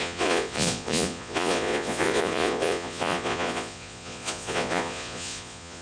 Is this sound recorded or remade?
remade